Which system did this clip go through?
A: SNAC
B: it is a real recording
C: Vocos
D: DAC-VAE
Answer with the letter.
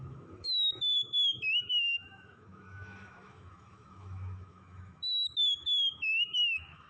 D